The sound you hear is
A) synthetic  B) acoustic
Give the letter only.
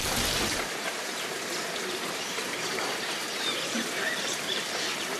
A